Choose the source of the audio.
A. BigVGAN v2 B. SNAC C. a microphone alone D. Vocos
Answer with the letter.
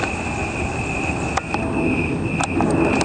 C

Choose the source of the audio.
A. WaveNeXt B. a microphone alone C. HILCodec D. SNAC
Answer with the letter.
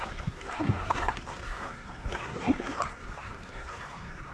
D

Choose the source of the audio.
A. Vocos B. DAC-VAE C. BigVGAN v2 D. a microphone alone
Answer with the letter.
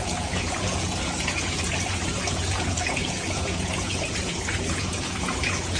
A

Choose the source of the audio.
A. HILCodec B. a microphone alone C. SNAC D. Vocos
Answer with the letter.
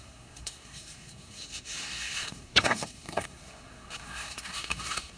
C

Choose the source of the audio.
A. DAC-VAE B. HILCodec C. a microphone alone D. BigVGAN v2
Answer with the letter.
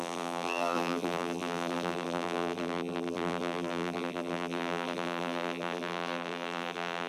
D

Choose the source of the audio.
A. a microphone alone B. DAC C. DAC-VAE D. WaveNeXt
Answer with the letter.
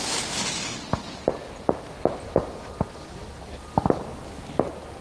A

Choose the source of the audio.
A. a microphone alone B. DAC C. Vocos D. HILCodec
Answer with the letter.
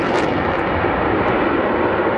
A